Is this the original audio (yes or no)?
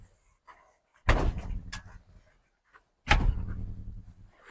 yes